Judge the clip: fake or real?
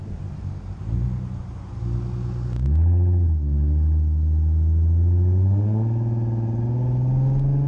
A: real